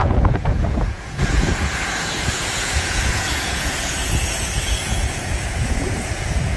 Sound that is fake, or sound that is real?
fake